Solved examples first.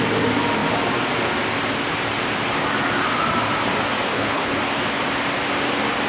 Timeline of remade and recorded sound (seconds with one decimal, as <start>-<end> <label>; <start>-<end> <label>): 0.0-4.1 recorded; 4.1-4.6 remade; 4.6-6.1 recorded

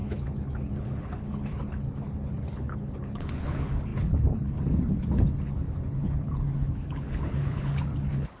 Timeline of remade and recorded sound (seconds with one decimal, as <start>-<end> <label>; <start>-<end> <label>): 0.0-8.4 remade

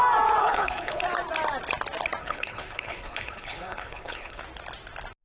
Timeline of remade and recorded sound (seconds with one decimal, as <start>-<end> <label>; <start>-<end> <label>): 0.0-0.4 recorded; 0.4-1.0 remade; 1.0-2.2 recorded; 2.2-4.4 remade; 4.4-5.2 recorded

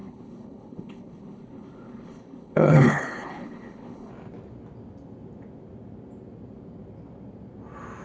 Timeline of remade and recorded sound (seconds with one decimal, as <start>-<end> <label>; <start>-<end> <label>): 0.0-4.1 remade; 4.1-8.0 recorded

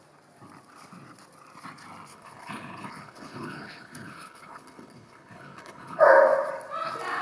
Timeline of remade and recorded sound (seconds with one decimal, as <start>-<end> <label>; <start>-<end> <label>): 0.0-2.1 recorded; 2.1-6.0 remade; 6.0-7.2 recorded

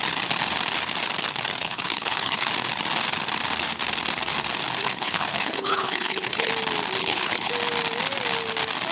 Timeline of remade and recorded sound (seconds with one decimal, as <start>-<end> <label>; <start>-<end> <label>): 0.0-1.6 recorded; 1.6-2.5 remade; 2.5-4.8 recorded; 4.8-6.5 remade; 6.5-7.0 recorded; 7.0-7.5 remade; 7.5-8.9 recorded